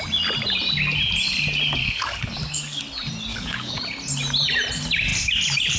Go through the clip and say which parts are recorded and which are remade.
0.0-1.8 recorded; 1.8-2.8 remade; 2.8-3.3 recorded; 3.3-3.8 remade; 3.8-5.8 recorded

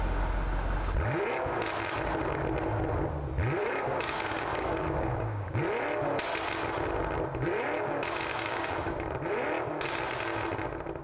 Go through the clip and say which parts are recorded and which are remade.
0.0-3.6 recorded; 3.6-5.6 remade; 5.6-8.3 recorded; 8.3-8.9 remade; 8.9-11.0 recorded

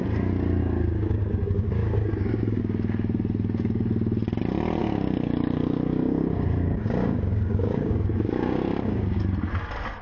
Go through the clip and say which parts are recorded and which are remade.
0.0-0.6 recorded; 0.6-2.6 remade; 2.6-4.8 recorded; 4.8-9.2 remade; 9.2-10.0 recorded

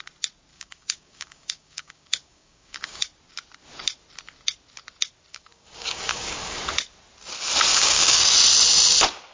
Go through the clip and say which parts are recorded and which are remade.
0.0-0.5 recorded; 0.5-3.1 remade; 3.1-5.3 recorded; 5.3-6.6 remade; 6.6-7.7 recorded; 7.7-8.2 remade; 8.2-9.3 recorded